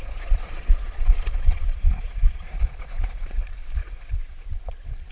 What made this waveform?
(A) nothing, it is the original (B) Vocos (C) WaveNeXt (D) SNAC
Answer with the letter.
B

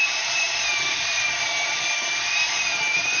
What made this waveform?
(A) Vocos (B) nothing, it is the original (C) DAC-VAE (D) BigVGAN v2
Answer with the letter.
D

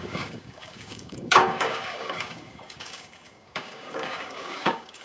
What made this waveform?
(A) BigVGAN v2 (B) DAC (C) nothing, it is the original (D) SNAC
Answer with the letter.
B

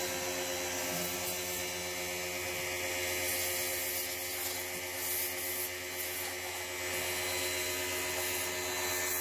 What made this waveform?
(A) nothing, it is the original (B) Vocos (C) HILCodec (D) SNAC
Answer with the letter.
A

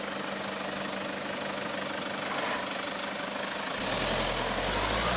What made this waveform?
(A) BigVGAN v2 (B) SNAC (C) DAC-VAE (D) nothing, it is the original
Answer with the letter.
D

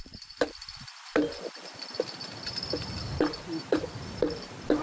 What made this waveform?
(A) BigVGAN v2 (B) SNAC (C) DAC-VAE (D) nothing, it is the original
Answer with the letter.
A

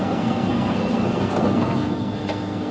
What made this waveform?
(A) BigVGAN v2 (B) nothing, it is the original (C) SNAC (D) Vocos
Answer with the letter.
C